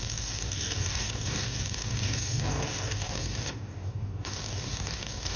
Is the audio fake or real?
fake